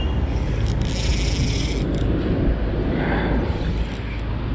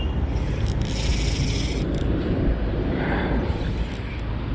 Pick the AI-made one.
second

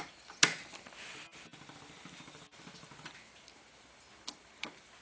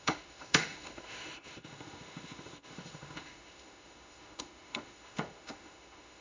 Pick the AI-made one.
second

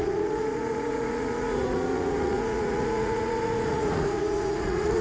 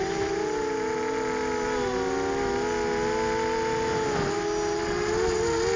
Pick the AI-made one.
first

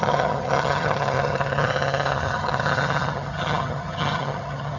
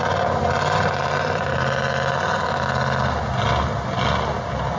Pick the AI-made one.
first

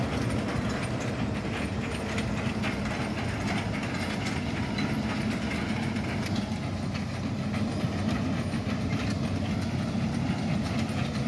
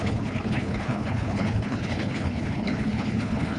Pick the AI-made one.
second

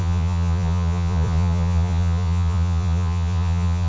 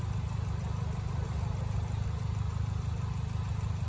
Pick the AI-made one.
first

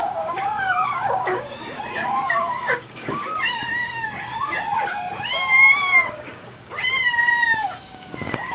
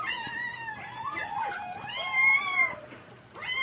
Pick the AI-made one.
first